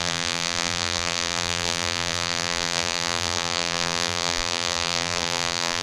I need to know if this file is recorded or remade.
remade